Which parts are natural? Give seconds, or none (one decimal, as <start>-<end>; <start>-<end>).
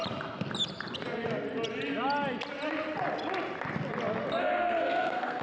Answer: 0.0-4.4